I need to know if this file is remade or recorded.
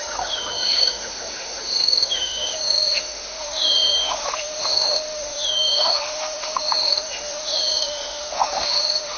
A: remade